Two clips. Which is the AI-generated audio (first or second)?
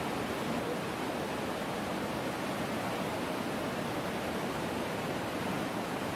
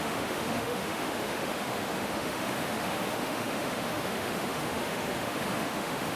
second